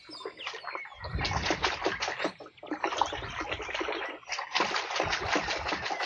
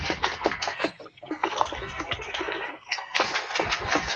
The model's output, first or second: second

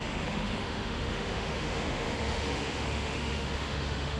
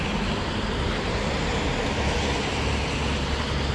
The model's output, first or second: first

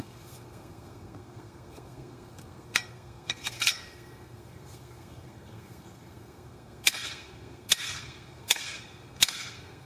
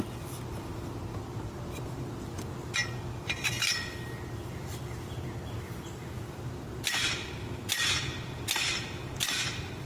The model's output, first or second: first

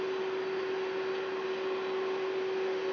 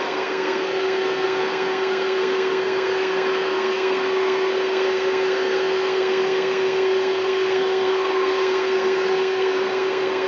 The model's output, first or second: second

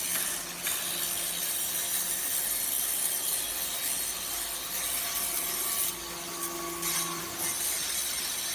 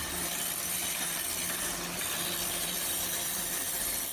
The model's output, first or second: second